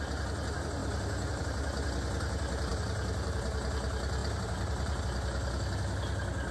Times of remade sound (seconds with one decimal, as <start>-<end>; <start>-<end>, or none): 2.7-3.4; 4.2-5.0